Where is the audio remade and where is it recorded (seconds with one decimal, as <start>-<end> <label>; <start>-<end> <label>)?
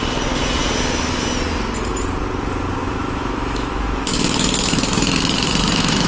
0.0-2.8 recorded; 2.8-6.1 remade